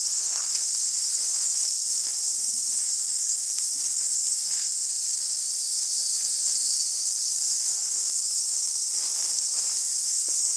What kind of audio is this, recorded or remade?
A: remade